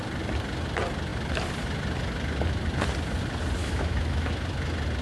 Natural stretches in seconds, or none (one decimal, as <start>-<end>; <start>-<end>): 0.0-3.6; 4.3-5.0